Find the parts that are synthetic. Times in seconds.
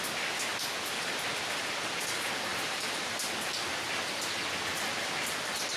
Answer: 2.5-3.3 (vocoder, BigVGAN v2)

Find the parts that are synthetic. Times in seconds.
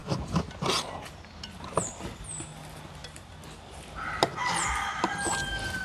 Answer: none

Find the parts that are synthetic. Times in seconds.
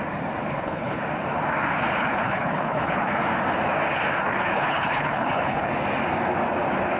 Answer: 0.5-1.0 (codec, HILCodec); 2.0-3.1; 4.3-5.7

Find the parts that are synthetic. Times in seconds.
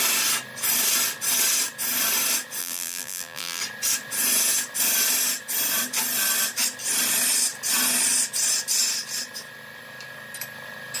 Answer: 2.6-3.6 (vocoder, BigVGAN v2)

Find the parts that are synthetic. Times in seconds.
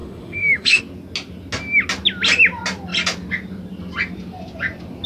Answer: 0.0-0.8 (autoencoder, DAC-VAE)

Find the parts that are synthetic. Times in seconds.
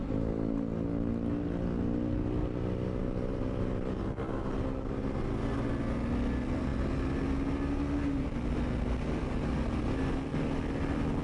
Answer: none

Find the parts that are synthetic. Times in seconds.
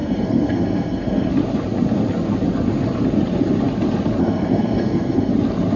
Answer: 0.0-1.3 (codec, SNAC); 4.2-5.3